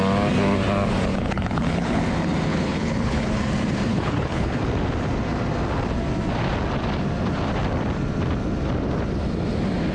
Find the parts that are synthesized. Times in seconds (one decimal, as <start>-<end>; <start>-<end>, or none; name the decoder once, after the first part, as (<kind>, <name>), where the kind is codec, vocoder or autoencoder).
1.1-2.0 (codec, HILCodec); 2.5-3.3; 3.9-4.6